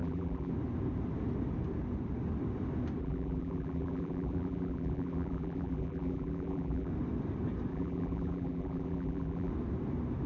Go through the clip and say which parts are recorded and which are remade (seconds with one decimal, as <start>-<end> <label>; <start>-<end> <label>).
0.0-0.5 remade; 0.5-3.0 recorded; 3.0-6.9 remade; 6.9-7.7 recorded; 7.7-9.5 remade; 9.5-10.3 recorded